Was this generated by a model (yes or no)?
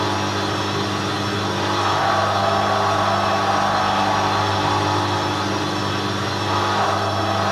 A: no